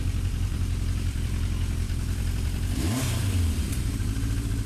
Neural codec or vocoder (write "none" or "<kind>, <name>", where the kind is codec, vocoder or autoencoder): vocoder, BigVGAN v2